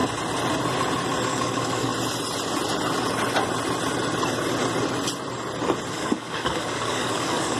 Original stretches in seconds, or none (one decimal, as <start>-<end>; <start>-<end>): 0.0-1.3; 1.9-5.9

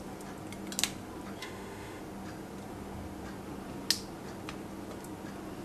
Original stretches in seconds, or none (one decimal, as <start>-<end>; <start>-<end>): 0.0-1.4; 2.0-5.6

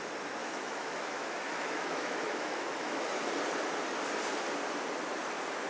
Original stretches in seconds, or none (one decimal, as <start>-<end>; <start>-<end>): 0.0-0.4; 3.1-5.7

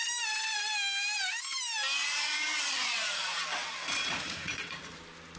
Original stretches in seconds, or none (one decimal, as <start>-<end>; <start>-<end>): 0.0-2.0; 3.4-4.0; 4.9-5.4

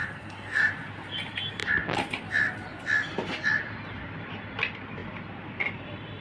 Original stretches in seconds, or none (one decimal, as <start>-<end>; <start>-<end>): 0.7-6.2

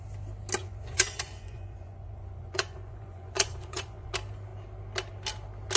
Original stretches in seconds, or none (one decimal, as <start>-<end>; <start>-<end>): 0.0-0.6; 4.1-5.8

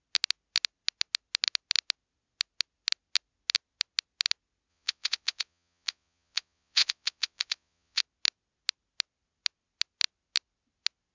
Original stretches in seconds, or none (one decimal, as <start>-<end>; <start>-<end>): 0.0-4.7; 8.0-11.1

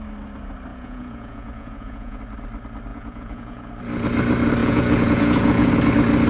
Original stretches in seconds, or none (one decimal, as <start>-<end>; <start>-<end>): 0.0-0.7; 2.2-2.9; 3.7-4.6; 5.7-6.3